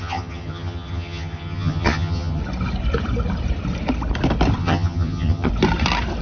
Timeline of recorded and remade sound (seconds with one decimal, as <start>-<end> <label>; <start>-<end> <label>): 0.0-2.4 remade; 2.4-4.6 recorded; 4.6-5.5 remade; 5.5-6.2 recorded